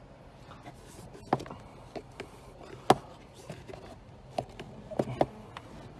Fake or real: real